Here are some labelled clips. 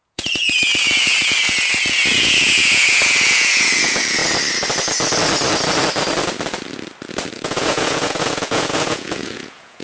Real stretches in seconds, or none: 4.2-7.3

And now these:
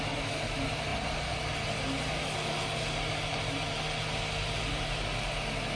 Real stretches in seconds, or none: 0.0-5.8